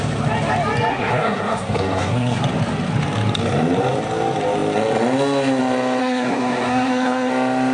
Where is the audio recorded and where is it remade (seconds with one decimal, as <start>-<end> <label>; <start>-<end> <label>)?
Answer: 0.0-0.9 recorded; 0.9-2.4 remade; 2.4-6.0 recorded; 6.0-7.3 remade; 7.3-7.7 recorded